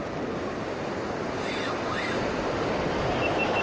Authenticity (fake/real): real